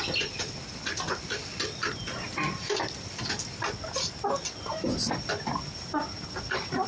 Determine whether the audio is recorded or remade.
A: recorded